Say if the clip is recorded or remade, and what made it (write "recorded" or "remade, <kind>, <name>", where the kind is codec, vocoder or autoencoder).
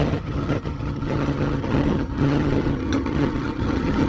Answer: remade, vocoder, HiFi-GAN